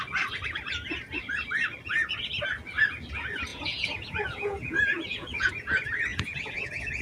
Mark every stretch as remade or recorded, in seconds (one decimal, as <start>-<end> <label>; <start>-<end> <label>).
0.0-3.5 recorded; 3.5-5.5 remade; 5.5-6.1 recorded; 6.1-7.0 remade